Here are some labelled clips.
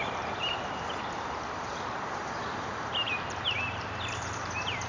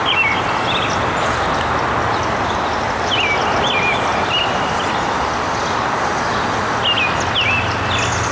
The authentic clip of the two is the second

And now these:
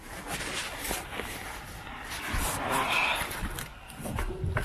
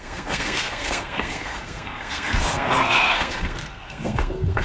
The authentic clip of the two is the first